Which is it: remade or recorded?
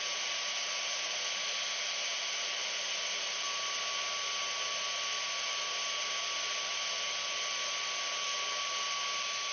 recorded